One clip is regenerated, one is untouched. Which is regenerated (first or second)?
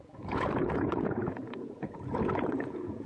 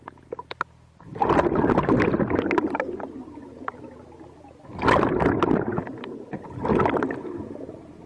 first